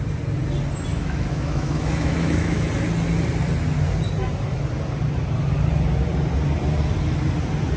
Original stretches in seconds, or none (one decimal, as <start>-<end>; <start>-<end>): 0.0-0.9; 2.7-7.8